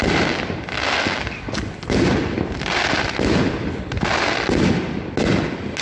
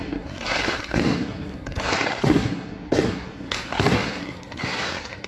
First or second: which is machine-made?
second